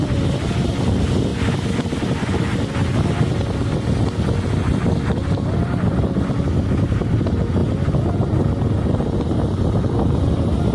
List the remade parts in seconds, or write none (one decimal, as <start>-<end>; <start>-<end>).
none